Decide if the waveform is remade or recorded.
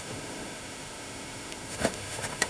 remade